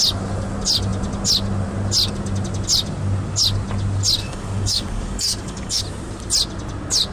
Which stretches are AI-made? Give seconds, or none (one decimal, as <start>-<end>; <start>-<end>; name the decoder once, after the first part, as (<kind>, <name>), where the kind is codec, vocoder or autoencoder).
4.2-5.8 (codec, DAC)